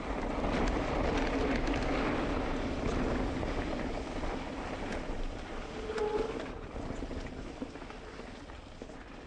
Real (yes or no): yes